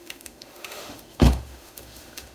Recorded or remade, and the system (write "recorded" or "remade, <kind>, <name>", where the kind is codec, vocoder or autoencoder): remade, autoencoder, DAC-VAE